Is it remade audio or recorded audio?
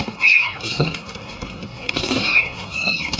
remade